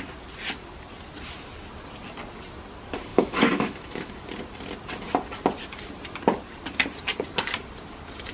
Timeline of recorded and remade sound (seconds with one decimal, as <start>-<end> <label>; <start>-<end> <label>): 0.0-3.1 recorded; 3.1-4.1 remade; 4.1-8.3 recorded